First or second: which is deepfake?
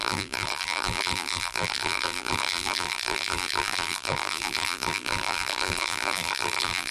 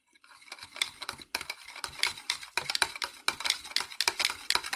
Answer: first